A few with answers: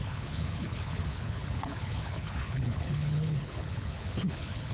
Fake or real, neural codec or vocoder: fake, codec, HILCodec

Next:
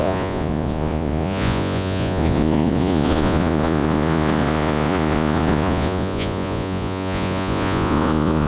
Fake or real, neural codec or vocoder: fake, vocoder, Vocos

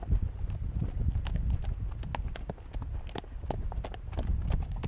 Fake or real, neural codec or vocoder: real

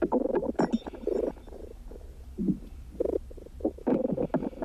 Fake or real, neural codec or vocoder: real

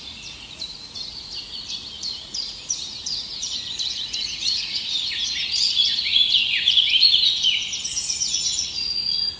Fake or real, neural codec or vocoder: fake, vocoder, Vocos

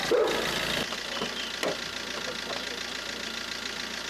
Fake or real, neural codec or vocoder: real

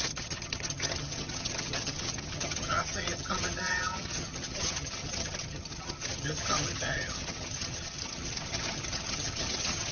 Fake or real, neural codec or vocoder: fake, vocoder, HiFi-GAN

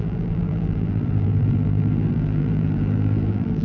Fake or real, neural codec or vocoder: fake, vocoder, BigVGAN v2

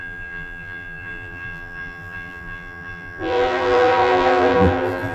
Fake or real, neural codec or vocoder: fake, vocoder, BigVGAN v2